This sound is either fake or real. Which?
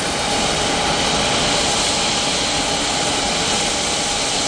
real